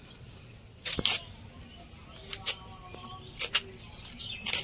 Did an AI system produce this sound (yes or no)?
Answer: no